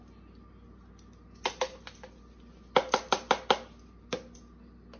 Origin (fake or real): real